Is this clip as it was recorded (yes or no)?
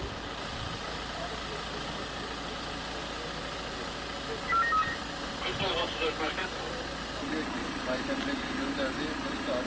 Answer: yes